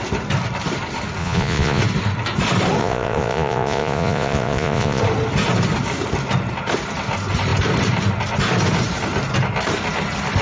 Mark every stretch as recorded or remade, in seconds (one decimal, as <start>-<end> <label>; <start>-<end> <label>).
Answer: 0.0-1.2 recorded; 1.2-1.8 remade; 1.8-2.8 recorded; 2.8-5.0 remade; 5.0-10.4 recorded